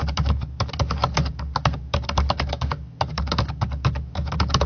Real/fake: fake